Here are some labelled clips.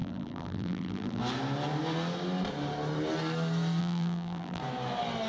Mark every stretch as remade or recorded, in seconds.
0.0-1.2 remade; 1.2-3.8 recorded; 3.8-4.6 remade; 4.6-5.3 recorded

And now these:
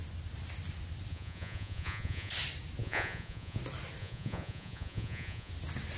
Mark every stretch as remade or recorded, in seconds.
0.0-1.1 recorded; 1.1-2.3 remade; 2.3-2.8 recorded; 2.8-3.6 remade; 3.6-4.0 recorded; 4.0-5.5 remade; 5.5-6.0 recorded